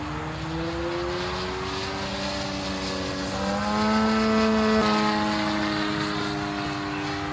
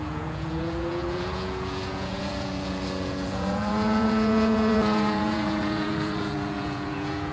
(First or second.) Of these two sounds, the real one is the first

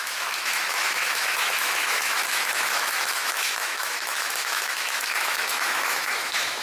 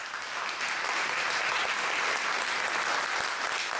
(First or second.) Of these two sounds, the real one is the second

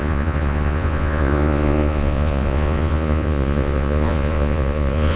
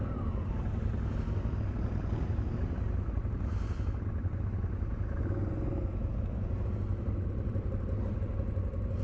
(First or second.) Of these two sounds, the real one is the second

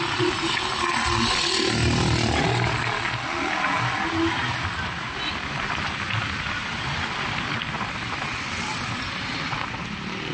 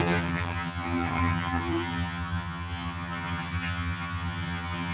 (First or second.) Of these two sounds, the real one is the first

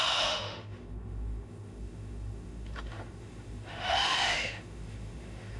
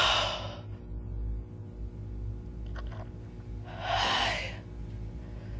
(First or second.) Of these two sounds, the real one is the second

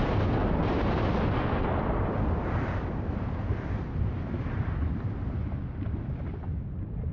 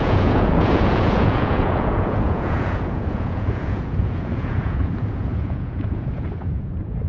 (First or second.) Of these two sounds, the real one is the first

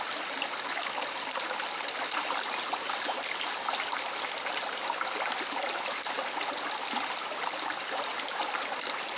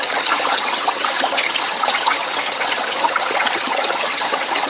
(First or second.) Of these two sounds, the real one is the first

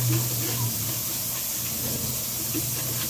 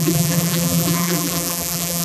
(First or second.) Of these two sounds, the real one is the first